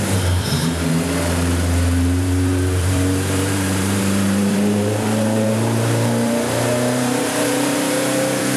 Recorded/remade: remade